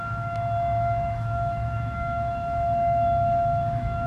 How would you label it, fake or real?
fake